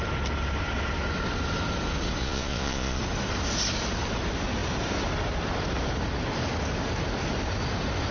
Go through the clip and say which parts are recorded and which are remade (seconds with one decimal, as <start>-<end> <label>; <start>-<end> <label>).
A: 0.0-2.2 recorded; 2.2-3.0 remade; 3.0-8.1 recorded